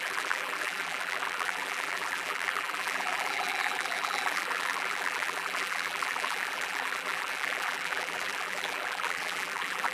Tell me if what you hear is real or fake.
fake